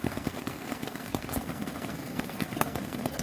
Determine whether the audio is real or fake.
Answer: fake